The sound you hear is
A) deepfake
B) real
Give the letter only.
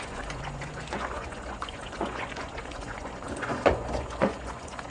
A